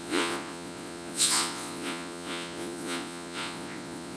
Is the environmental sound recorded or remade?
remade